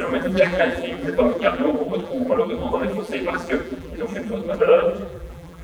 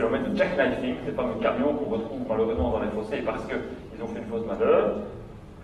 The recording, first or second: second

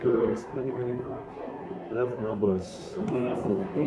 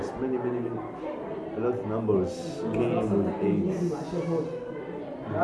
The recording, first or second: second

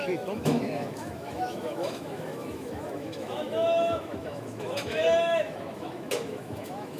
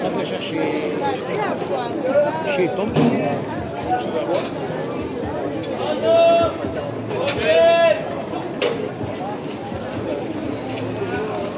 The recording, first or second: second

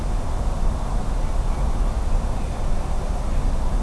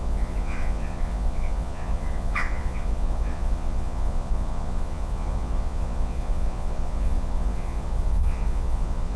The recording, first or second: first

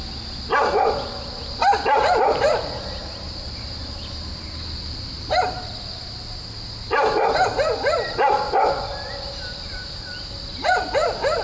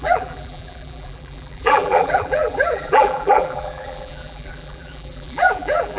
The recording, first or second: first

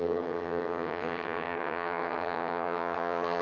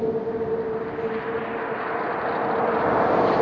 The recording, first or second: second